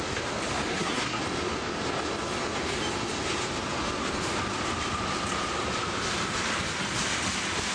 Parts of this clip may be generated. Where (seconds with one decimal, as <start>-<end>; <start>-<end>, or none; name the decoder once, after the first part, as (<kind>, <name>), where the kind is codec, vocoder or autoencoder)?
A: 0.7-1.2 (codec, SNAC)